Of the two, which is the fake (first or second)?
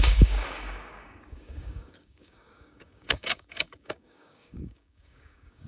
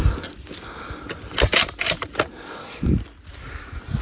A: first